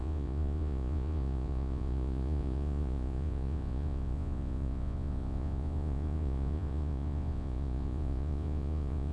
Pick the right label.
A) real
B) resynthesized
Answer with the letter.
B